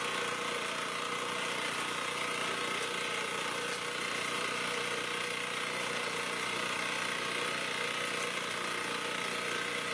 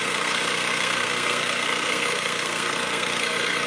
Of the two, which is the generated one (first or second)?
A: second